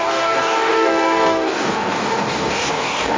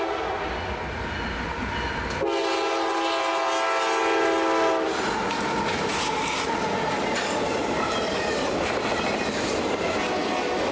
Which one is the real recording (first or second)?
second